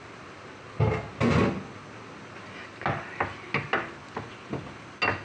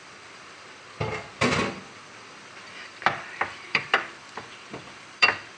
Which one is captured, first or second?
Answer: first